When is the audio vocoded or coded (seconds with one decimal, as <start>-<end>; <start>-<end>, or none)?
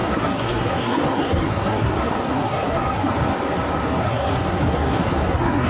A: 0.0-3.1; 4.0-5.7